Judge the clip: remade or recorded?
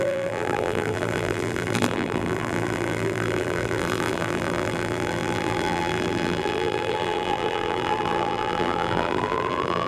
remade